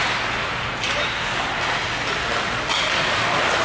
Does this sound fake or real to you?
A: real